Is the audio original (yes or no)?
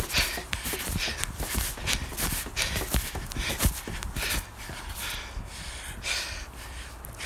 yes